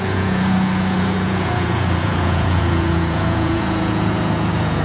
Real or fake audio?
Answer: fake